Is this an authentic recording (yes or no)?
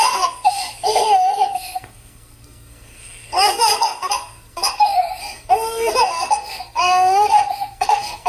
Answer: no